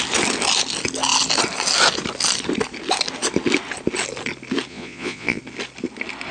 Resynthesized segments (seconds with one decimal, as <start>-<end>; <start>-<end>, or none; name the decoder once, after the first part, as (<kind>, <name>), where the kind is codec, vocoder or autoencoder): 4.7-5.4 (vocoder, Vocos)